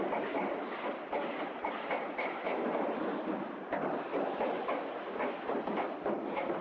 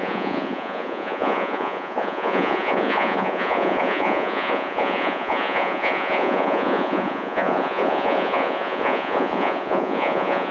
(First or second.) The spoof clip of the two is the second